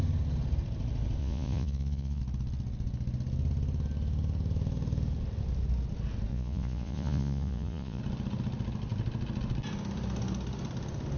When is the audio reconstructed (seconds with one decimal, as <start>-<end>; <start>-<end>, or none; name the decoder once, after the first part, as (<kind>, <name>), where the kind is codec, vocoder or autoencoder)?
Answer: 1.2-2.2 (vocoder, Vocos); 6.3-8.0